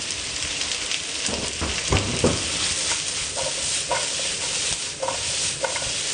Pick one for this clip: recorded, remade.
recorded